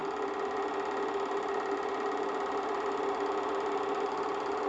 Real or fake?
real